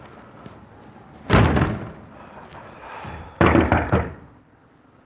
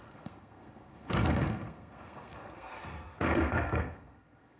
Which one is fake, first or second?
second